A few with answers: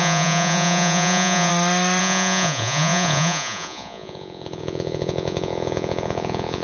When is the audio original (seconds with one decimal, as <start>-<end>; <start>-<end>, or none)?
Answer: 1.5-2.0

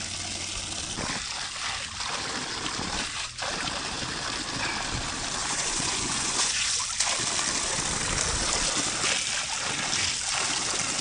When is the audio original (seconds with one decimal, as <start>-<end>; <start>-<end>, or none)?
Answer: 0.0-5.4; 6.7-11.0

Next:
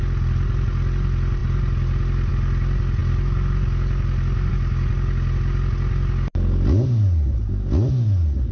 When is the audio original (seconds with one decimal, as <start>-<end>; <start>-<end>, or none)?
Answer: 0.0-8.5

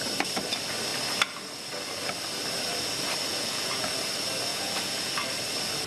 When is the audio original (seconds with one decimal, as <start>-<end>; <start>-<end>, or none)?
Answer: 0.0-3.3; 3.9-4.5; 5.2-5.9